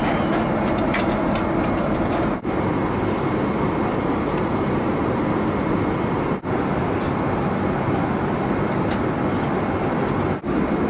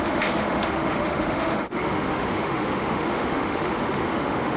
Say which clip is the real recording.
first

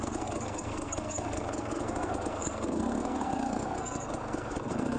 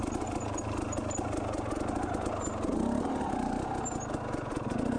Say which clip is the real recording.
second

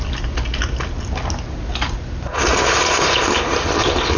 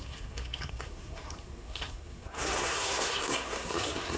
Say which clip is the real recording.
first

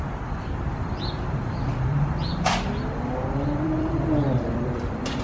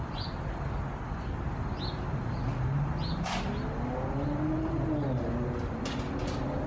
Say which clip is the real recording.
second